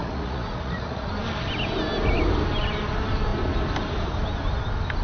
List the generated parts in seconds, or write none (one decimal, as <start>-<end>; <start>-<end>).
0.0-1.1